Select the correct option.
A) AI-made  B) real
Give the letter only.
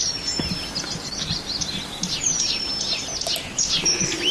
B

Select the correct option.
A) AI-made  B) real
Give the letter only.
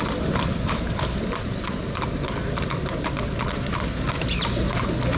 B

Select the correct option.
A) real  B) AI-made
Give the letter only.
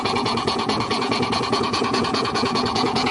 B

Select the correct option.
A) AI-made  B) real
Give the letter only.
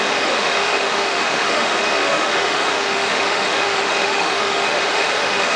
A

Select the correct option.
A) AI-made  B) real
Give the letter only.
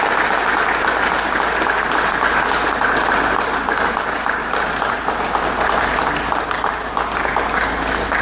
B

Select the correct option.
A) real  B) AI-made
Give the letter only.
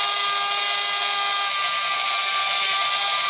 A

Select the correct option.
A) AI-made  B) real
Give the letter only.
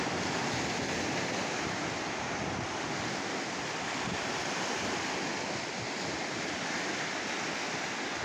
B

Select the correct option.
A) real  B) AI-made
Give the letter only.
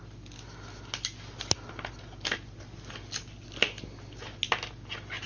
A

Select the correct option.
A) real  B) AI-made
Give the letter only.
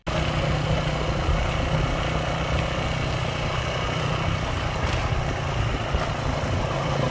A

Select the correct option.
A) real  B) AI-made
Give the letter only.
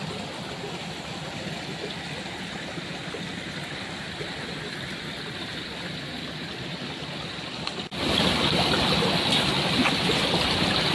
A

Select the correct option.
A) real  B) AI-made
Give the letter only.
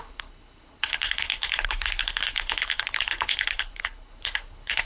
B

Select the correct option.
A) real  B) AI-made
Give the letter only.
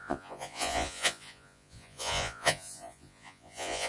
B